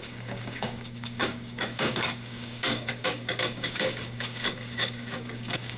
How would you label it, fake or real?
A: fake